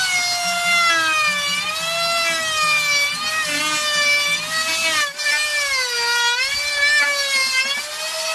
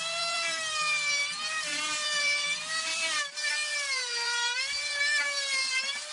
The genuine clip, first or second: first